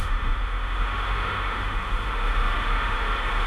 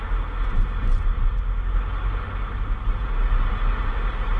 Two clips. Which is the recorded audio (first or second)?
second